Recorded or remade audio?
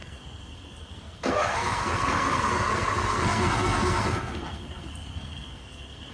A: remade